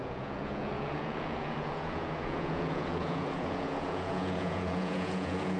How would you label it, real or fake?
fake